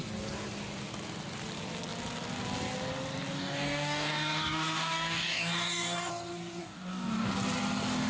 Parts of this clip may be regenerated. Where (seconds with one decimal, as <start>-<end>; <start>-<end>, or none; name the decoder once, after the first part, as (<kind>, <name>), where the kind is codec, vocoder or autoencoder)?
3.3-6.1 (codec, DAC); 6.6-7.3